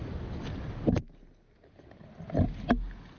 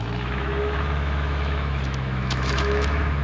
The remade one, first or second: second